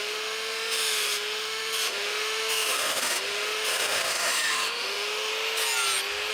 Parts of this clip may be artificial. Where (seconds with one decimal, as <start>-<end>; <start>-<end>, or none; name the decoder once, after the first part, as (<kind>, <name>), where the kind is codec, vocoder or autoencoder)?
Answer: 0.0-5.3 (autoencoder, DAC-VAE)